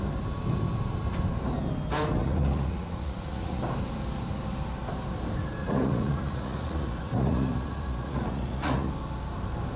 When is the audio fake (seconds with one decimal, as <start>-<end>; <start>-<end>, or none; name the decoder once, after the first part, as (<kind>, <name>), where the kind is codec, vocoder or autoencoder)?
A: 2.2-3.6 (vocoder, Vocos); 5.6-8.9